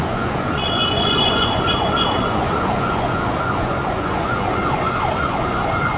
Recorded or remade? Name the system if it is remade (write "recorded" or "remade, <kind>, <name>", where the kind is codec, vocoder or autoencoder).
remade, vocoder, Vocos